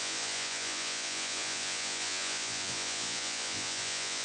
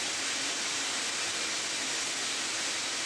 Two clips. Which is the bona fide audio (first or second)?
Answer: second